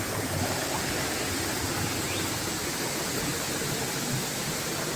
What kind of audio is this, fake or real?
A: real